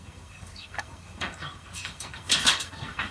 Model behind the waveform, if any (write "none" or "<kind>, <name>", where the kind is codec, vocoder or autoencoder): codec, SNAC